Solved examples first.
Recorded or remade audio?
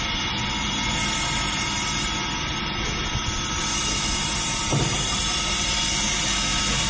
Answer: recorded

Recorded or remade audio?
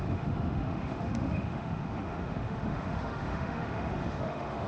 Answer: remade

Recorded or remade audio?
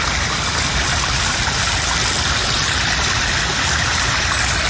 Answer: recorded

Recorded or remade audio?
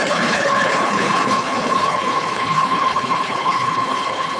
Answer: remade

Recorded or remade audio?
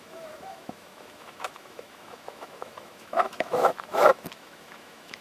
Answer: remade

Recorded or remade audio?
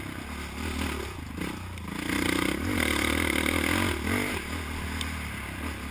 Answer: recorded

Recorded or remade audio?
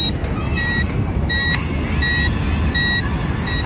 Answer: recorded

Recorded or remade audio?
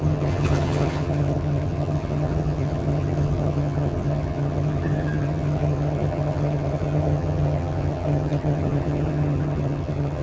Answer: remade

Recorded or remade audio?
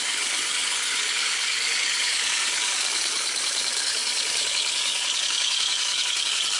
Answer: remade